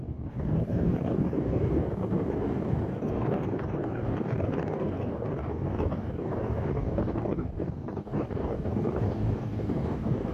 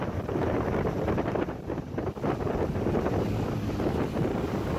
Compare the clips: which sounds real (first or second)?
second